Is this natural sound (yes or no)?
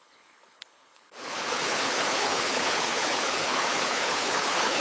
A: no